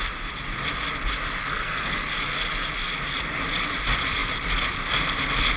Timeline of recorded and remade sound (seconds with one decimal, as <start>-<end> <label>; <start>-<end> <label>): 0.0-1.4 recorded; 1.4-2.1 remade; 2.1-5.6 recorded